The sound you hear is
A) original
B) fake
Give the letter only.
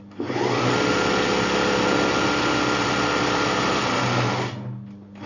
A